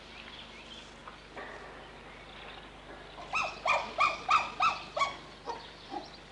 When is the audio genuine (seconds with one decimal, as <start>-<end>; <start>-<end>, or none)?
0.0-6.3